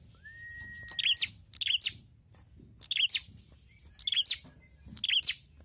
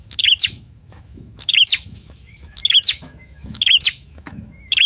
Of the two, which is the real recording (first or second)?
first